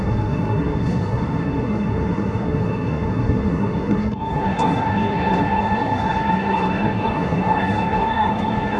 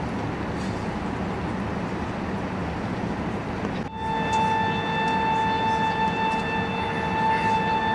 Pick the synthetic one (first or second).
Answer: first